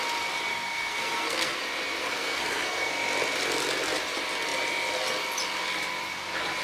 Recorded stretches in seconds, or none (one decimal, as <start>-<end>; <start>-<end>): 0.0-0.5; 1.6-2.0; 2.9-6.6